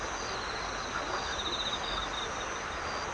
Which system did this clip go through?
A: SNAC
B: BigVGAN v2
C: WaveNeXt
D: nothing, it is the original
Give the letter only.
D